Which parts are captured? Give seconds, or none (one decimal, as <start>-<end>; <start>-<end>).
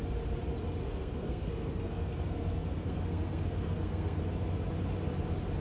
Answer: 0.0-0.8; 4.2-5.6